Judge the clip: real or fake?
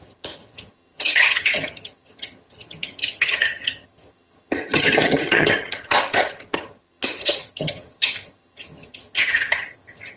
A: fake